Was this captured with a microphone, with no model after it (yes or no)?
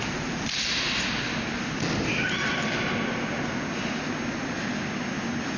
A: yes